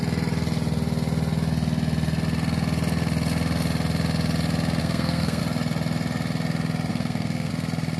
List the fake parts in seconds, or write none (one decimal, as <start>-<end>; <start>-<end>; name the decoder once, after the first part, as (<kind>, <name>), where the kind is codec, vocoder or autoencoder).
4.8-5.4 (codec, SNAC); 6.9-7.5